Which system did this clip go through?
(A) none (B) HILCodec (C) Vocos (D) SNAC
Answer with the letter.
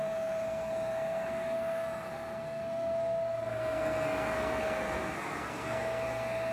D